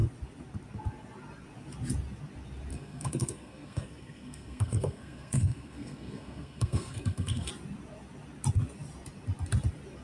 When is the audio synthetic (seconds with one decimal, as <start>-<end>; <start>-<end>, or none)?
2.7-7.5